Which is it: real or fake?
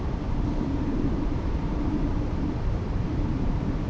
fake